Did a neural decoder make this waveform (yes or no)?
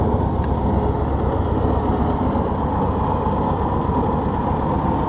no